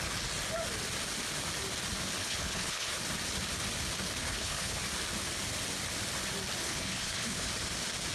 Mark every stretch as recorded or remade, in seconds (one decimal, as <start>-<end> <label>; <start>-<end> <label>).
0.0-2.2 recorded; 2.2-2.9 remade; 2.9-4.2 recorded; 4.2-4.8 remade; 4.8-6.6 recorded; 6.6-7.5 remade; 7.5-8.1 recorded